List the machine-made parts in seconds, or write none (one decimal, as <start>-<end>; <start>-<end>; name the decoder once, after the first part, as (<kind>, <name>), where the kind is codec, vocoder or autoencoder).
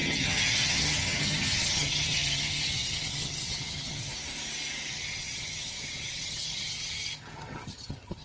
0.0-4.1 (vocoder, HiFi-GAN); 4.9-8.2